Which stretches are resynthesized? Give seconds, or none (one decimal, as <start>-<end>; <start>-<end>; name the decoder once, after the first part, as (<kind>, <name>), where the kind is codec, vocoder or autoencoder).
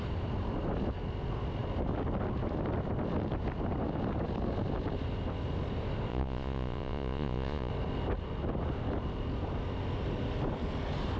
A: 6.1-7.7 (vocoder, Vocos)